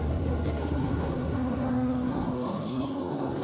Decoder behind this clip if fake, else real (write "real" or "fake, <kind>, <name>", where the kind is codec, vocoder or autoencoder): fake, codec, SNAC